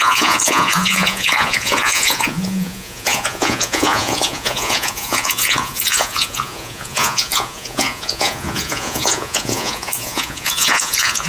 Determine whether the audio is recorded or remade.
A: remade